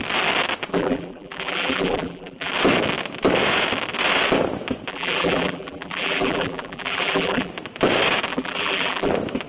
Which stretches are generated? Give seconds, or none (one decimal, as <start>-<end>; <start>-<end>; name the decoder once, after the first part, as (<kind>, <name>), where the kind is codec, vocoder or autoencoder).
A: 0.7-2.5 (vocoder, BigVGAN v2); 4.9-7.5; 8.3-9.1